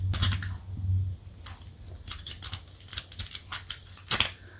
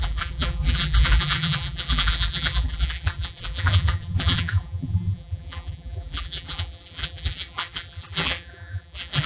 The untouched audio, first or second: first